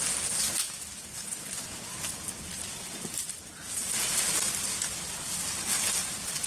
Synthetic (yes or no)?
no